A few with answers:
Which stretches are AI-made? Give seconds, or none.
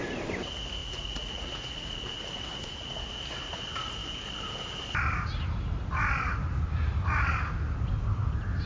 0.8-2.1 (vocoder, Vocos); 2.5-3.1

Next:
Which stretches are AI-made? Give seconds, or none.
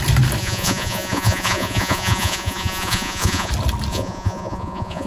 0.4-3.5 (vocoder, Vocos); 3.9-5.1